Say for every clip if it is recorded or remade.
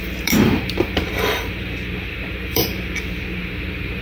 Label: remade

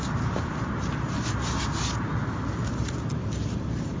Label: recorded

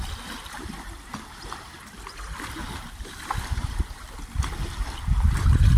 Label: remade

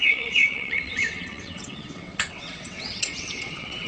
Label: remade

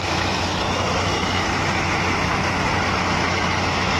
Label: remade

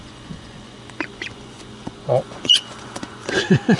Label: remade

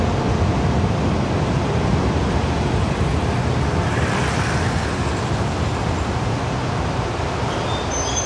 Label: recorded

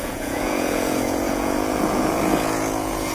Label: remade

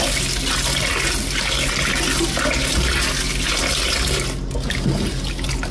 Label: recorded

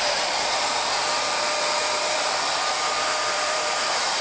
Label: remade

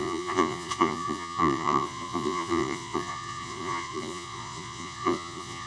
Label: remade